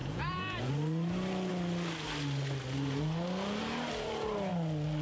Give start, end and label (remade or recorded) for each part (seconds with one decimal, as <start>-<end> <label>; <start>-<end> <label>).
0.0-0.7 remade; 0.7-5.0 recorded